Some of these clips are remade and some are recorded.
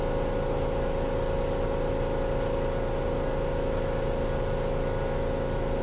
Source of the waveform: recorded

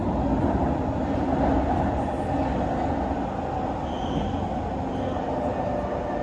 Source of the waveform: recorded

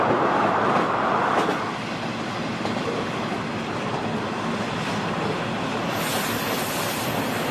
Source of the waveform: recorded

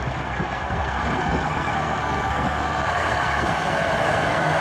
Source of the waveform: remade